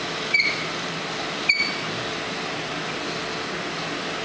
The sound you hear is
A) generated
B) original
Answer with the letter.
B